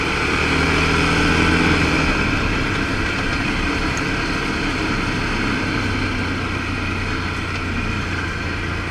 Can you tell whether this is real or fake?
real